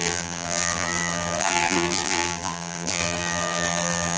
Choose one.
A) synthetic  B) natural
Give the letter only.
A